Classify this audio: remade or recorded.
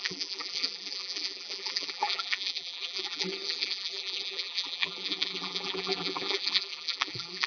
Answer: remade